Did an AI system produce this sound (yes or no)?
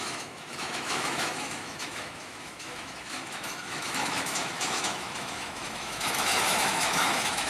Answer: yes